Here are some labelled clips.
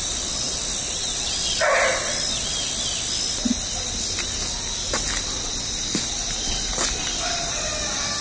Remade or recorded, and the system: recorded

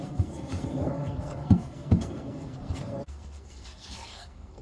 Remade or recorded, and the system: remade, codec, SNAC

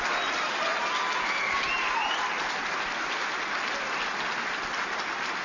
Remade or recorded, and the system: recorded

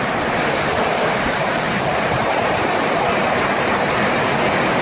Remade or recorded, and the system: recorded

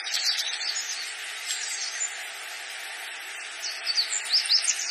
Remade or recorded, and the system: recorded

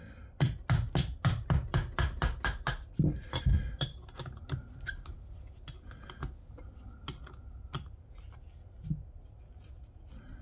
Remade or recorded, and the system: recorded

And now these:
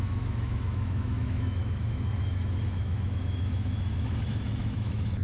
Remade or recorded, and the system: remade, autoencoder, DAC-VAE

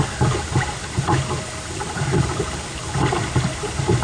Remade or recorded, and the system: recorded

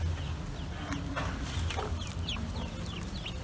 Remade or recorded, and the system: recorded